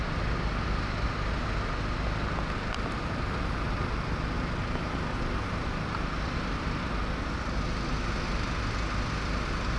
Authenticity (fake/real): real